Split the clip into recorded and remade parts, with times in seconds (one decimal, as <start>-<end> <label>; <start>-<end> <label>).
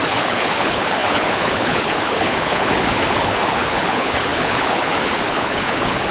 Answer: 0.0-6.1 remade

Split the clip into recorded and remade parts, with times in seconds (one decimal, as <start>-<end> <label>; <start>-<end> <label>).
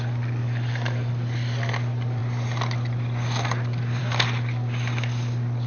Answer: 0.0-0.4 recorded; 0.4-1.1 remade; 1.1-5.7 recorded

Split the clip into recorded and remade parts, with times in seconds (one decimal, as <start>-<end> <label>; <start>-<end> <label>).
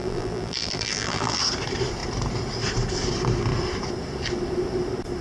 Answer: 0.0-1.4 remade; 1.4-5.2 recorded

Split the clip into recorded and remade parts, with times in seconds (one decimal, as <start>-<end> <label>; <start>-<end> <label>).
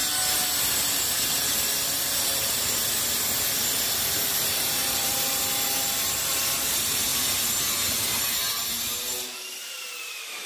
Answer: 0.0-4.0 recorded; 4.0-7.1 remade; 7.1-9.6 recorded; 9.6-10.5 remade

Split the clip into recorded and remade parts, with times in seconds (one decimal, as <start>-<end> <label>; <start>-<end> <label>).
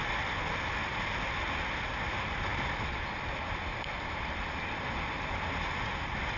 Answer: 0.0-6.4 recorded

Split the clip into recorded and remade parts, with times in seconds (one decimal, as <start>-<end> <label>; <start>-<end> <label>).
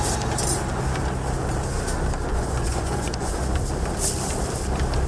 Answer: 0.0-2.3 recorded; 2.3-3.4 remade; 3.4-5.1 recorded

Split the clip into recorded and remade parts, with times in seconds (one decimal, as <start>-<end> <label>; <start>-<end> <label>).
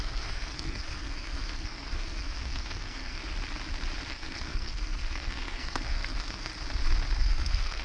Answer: 0.0-3.2 remade; 3.2-4.1 recorded; 4.1-6.5 remade; 6.5-7.2 recorded; 7.2-7.8 remade